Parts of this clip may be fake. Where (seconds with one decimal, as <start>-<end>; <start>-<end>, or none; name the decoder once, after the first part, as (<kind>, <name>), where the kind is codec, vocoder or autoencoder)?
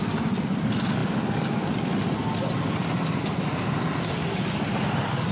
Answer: none